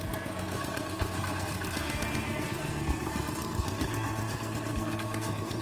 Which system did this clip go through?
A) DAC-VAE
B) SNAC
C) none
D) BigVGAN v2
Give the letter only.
B